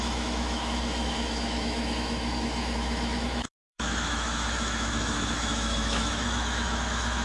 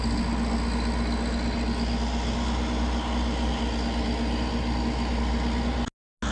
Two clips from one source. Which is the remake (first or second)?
first